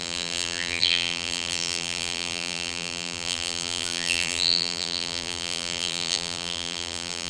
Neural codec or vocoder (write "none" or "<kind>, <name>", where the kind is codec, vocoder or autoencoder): vocoder, BigVGAN v2